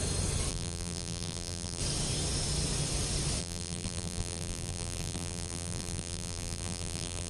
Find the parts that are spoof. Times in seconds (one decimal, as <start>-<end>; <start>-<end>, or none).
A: 0.5-1.8; 3.4-7.3